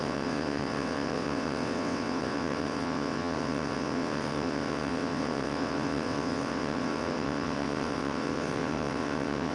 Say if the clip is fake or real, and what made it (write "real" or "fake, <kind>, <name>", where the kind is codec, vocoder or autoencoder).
fake, vocoder, WaveNeXt